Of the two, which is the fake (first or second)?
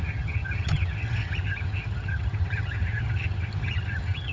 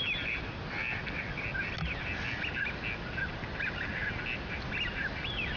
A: first